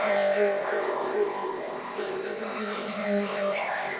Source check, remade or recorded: remade